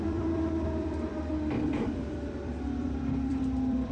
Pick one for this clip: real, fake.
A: fake